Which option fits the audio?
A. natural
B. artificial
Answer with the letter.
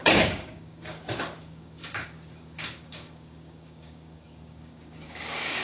B